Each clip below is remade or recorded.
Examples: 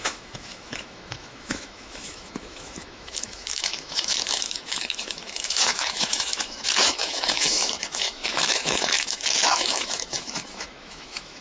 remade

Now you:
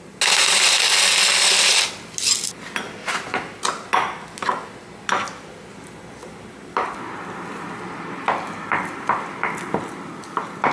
recorded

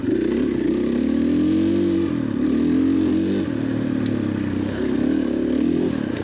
recorded